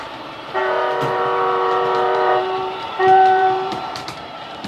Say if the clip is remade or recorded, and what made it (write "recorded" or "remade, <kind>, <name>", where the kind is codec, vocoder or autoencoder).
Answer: remade, vocoder, BigVGAN v2